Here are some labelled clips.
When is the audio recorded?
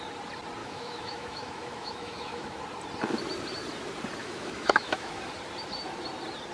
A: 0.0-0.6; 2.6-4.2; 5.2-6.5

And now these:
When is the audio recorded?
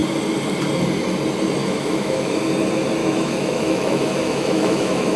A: 0.0-1.6; 2.4-3.0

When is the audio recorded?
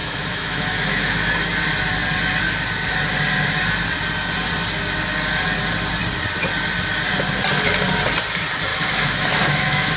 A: 1.3-8.7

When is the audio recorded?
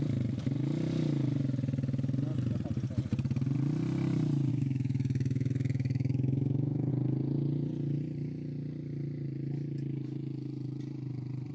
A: 0.0-4.5; 6.9-11.5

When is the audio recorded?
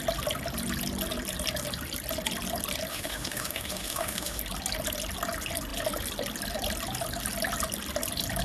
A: 0.0-2.9; 4.4-8.4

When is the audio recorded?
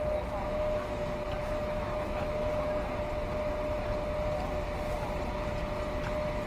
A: 0.0-1.4; 2.7-6.5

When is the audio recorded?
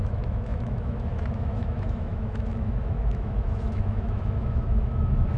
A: none